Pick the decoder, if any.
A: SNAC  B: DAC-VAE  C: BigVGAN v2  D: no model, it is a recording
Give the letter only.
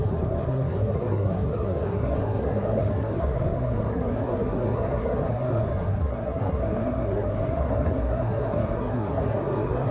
A